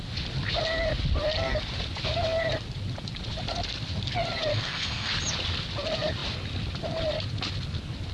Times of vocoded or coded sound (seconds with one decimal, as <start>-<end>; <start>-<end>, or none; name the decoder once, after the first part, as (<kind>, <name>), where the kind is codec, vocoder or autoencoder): 4.5-5.1 (codec, SNAC)